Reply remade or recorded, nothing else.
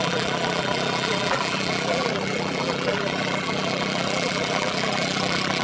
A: remade